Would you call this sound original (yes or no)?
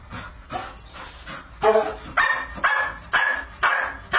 yes